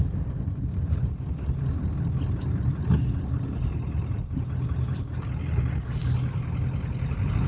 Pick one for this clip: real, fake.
real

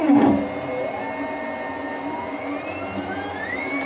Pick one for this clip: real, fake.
real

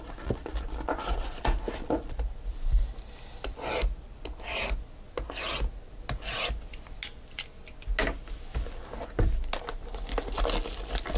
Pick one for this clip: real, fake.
real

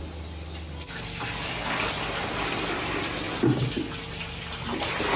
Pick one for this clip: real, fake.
real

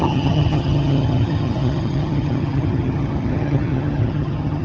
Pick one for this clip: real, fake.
fake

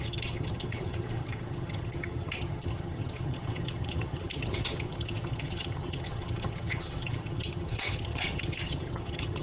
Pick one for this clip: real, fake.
fake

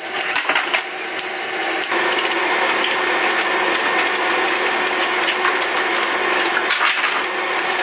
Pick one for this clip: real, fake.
real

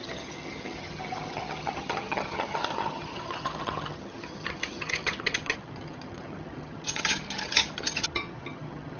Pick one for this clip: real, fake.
fake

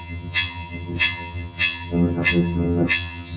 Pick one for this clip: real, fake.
fake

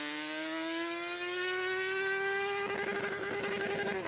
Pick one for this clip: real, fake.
real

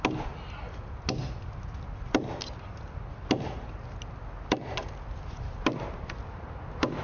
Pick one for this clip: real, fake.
real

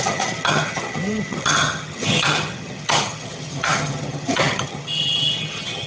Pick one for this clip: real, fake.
fake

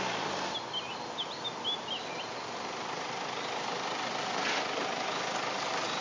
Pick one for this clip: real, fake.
real